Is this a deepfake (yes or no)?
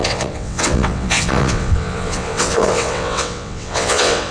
yes